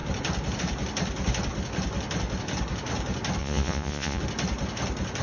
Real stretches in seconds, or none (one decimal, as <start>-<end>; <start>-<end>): 0.0-3.4; 4.2-5.2